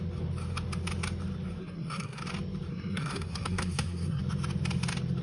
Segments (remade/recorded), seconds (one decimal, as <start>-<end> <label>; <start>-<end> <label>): 0.0-1.6 recorded; 1.6-2.2 remade; 2.2-2.7 recorded; 2.7-4.2 remade; 4.2-5.2 recorded